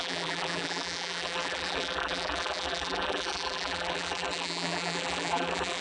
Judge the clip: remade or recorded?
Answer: remade